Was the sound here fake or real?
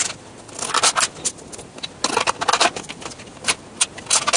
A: real